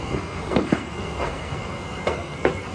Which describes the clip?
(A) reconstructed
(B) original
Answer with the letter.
A